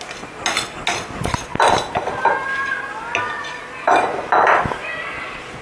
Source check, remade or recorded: recorded